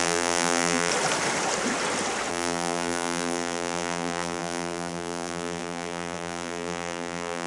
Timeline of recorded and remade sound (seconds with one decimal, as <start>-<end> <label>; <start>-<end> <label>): 0.0-0.9 remade; 0.9-2.3 recorded; 2.3-7.5 remade